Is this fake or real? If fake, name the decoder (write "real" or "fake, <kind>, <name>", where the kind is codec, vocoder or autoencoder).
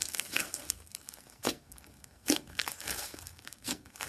fake, codec, SNAC